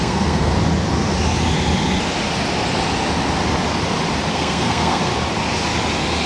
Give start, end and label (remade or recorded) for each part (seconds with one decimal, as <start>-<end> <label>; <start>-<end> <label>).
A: 0.0-0.5 remade; 0.5-4.3 recorded; 4.3-5.1 remade; 5.1-6.3 recorded

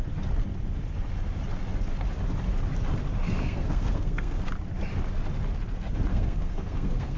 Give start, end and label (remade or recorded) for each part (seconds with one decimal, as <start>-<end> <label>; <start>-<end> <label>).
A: 0.0-3.4 recorded; 3.4-4.5 remade; 4.5-6.1 recorded; 6.1-7.2 remade

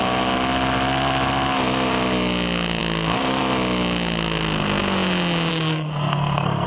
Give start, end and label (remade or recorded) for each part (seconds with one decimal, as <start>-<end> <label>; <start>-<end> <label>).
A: 0.0-5.5 recorded; 5.5-6.7 remade